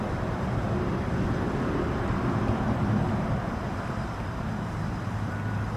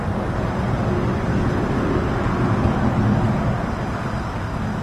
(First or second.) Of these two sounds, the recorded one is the second